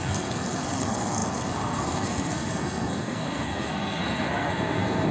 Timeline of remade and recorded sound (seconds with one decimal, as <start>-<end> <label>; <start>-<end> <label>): 0.0-5.1 remade